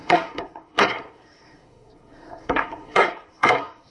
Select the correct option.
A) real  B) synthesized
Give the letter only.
B